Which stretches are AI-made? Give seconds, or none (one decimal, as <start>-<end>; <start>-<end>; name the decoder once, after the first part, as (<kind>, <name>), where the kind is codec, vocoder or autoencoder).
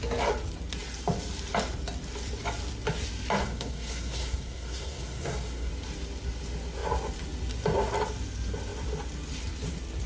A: 3.4-5.7 (codec, SNAC)